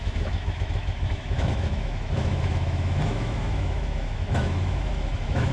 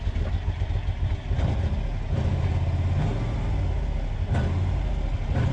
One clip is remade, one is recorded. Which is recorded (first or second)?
second